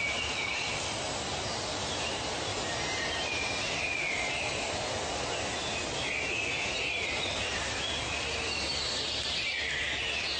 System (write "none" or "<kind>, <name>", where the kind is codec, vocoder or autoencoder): none